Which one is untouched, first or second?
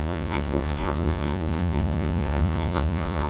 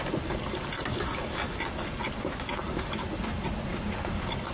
second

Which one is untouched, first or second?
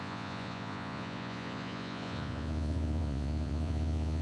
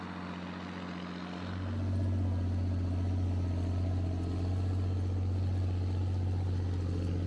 second